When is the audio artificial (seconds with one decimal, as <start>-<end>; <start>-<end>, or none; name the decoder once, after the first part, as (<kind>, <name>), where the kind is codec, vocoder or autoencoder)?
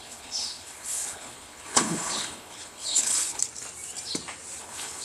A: 0.0-3.4 (codec, HILCodec); 4.6-5.0